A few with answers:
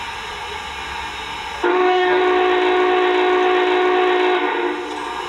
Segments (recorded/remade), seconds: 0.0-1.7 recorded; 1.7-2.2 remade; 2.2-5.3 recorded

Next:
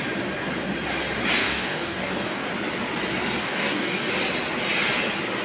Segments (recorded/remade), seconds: 0.0-1.4 recorded; 1.4-2.5 remade; 2.5-3.4 recorded; 3.4-4.1 remade; 4.1-5.4 recorded

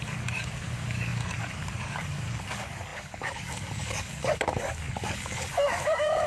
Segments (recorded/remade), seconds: 0.0-6.3 remade

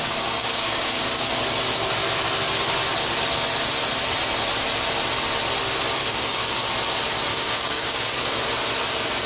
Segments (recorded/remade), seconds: 0.0-1.3 remade; 1.3-6.0 recorded; 6.0-6.7 remade; 6.7-7.3 recorded; 7.3-8.4 remade; 8.4-9.3 recorded

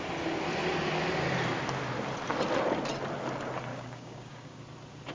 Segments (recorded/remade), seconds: 0.0-3.7 recorded; 3.7-4.6 remade; 4.6-5.1 recorded